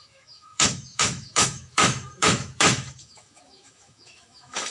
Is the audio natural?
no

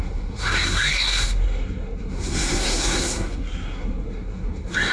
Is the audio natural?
no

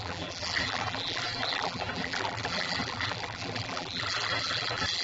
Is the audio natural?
no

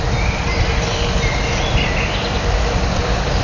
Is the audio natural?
yes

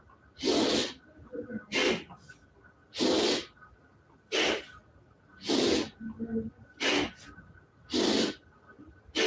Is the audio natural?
yes